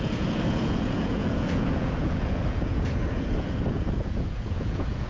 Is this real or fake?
fake